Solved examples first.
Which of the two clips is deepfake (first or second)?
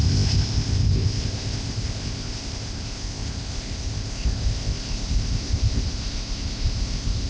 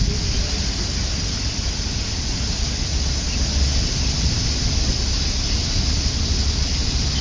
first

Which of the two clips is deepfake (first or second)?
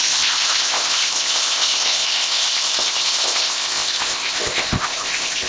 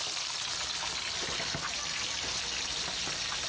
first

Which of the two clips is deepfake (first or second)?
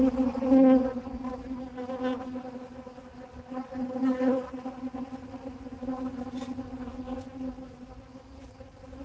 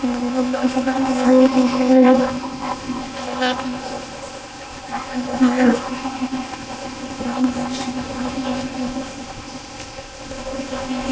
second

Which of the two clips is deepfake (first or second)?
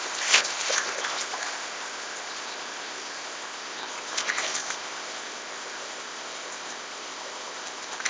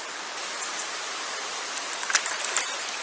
first